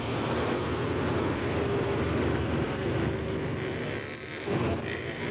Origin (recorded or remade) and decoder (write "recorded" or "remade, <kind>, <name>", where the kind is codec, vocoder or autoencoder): recorded